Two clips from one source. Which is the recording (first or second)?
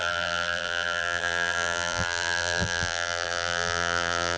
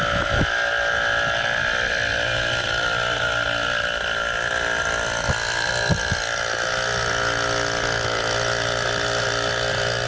second